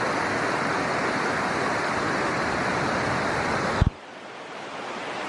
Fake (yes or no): no